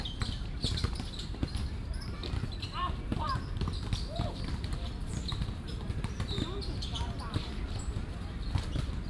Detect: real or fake fake